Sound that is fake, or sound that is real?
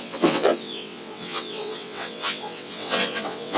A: fake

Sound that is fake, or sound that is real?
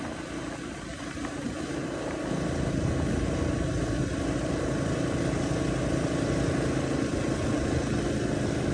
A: real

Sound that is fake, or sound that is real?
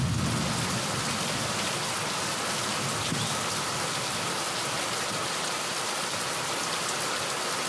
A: real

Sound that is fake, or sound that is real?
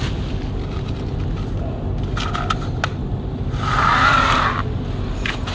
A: real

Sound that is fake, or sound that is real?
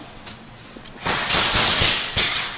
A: fake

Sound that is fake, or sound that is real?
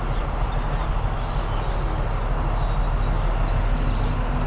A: real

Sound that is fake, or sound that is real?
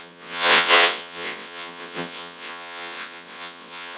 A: fake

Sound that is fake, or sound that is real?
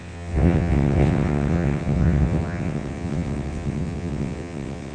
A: fake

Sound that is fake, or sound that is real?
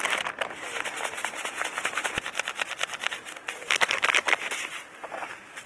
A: real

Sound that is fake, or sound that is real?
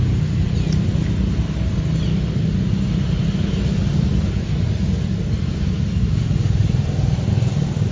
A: real